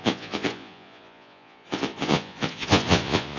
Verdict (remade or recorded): remade